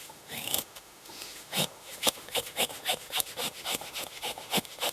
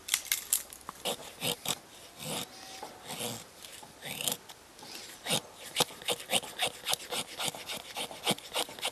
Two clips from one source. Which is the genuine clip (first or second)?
second